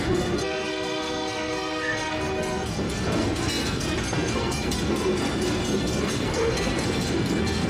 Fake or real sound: fake